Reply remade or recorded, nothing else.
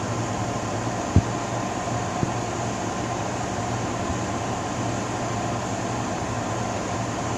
remade